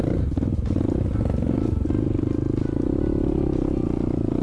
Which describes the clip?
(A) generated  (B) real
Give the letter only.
B